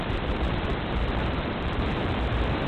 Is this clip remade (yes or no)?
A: yes